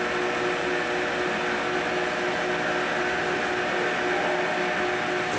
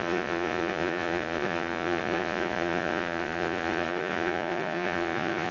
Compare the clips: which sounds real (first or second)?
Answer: first